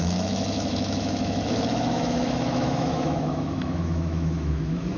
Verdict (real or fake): fake